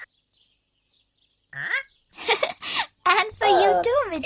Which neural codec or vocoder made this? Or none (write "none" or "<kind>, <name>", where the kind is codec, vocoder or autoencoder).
vocoder, BigVGAN v2